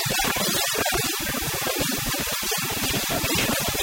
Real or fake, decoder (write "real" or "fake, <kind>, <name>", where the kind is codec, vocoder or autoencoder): fake, vocoder, BigVGAN v2